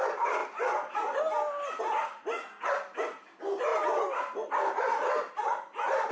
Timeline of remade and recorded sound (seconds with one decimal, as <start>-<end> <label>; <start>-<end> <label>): 0.0-6.1 recorded